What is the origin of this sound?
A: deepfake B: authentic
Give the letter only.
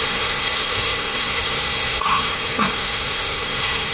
A